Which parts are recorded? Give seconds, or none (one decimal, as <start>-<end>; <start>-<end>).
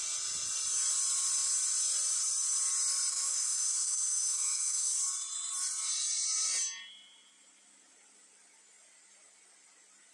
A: 0.0-3.1; 4.9-10.1